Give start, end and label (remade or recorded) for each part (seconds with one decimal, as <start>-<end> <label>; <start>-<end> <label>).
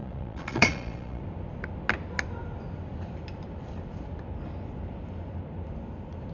0.0-1.2 remade; 1.2-6.3 recorded